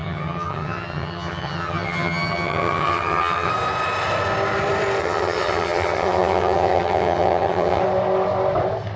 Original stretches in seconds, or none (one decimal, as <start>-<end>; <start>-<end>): 3.5-5.0; 7.8-9.0